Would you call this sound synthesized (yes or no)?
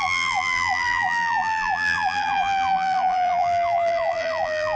yes